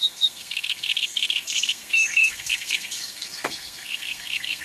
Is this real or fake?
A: fake